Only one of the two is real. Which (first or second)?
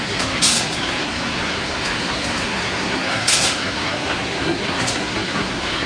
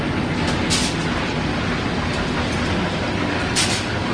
second